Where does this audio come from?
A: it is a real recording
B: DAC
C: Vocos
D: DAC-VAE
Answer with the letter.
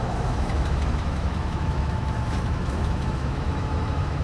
D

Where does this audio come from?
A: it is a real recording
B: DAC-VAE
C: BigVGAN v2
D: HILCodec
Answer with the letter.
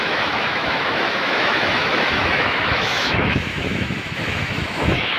B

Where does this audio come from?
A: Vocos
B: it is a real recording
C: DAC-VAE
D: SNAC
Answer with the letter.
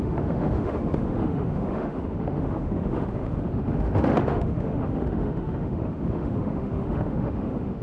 C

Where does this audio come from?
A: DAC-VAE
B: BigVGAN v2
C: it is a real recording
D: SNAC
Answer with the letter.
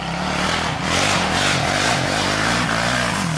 C